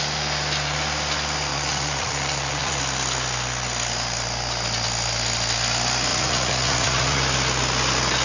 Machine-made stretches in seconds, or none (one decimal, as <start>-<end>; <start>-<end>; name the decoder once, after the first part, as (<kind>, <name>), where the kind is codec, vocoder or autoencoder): 1.5-2.8 (vocoder, Vocos); 6.1-7.2